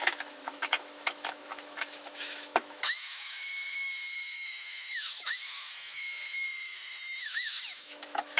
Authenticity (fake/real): fake